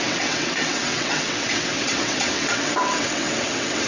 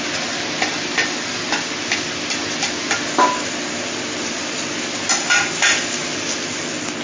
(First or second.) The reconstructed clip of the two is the first